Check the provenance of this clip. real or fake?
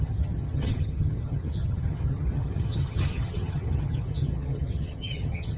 fake